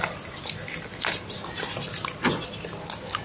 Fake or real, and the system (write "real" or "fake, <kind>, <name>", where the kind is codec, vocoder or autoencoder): real